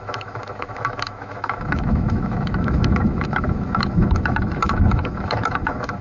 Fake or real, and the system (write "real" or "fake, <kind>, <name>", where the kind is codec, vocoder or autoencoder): fake, autoencoder, DAC-VAE